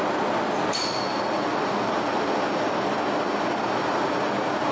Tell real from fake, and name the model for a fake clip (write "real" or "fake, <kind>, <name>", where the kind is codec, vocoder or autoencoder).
real